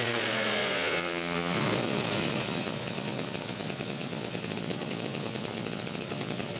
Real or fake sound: fake